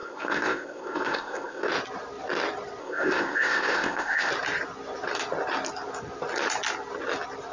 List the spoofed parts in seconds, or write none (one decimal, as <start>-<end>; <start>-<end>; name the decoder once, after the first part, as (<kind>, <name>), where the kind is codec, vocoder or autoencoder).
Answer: 0.0-1.7 (codec, ZipCodec); 2.8-4.3